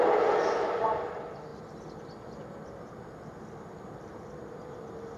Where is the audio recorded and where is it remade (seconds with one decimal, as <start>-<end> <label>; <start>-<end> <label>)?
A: 0.0-5.2 recorded